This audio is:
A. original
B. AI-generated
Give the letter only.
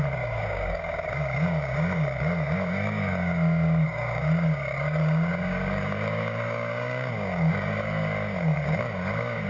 B